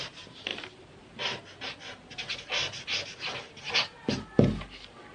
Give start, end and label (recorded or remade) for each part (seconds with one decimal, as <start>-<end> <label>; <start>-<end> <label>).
0.0-5.1 recorded